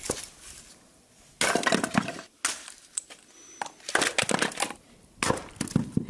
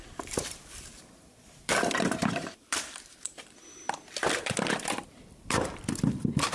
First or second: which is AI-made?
second